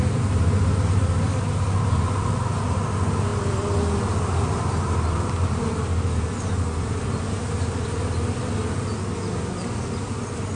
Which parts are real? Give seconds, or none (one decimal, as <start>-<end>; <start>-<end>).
0.0-10.6